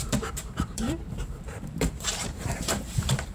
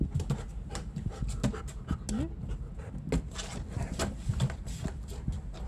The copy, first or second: first